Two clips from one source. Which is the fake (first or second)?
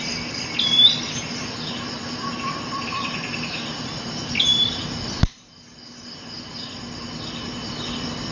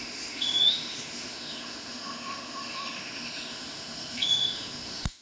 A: second